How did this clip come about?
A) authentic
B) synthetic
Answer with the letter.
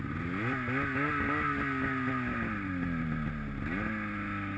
A